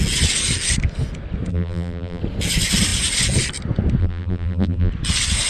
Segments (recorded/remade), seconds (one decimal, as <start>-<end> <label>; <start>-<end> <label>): 0.0-1.5 recorded; 1.5-2.2 remade; 2.2-4.0 recorded; 4.0-4.9 remade; 4.9-5.5 recorded

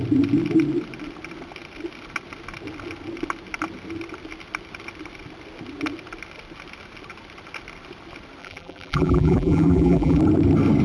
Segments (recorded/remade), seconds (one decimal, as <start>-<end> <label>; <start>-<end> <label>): 0.0-8.4 recorded; 8.4-10.2 remade; 10.2-10.8 recorded

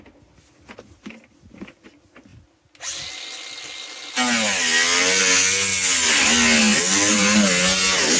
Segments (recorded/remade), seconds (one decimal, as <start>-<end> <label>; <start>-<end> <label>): 0.0-8.2 recorded

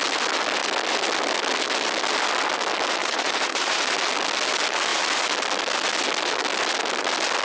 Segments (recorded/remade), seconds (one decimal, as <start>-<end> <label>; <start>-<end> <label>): 0.0-3.0 recorded; 3.0-3.8 remade; 3.8-7.4 recorded

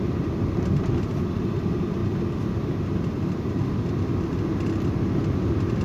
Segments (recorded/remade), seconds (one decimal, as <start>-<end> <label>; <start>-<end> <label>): 0.0-5.8 recorded

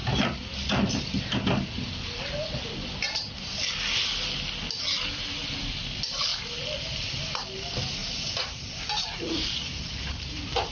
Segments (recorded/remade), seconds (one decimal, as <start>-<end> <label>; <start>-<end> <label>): 0.0-8.0 recorded; 8.0-10.7 remade

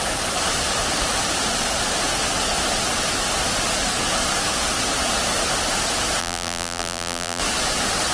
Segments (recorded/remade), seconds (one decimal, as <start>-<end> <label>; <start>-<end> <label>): 0.0-6.2 recorded; 6.2-7.4 remade; 7.4-8.1 recorded

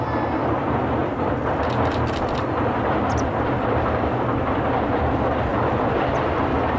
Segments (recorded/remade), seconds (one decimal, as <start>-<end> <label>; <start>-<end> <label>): 0.0-1.0 recorded; 1.0-4.9 remade; 4.9-5.5 recorded; 5.5-6.1 remade; 6.1-6.8 recorded